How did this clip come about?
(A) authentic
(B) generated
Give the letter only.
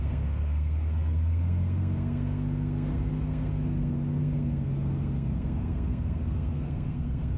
B